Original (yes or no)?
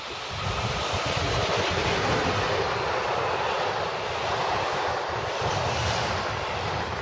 yes